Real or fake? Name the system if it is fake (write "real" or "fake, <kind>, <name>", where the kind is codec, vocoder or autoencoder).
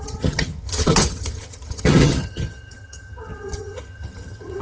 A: fake, vocoder, HiFi-GAN